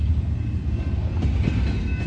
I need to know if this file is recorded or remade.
recorded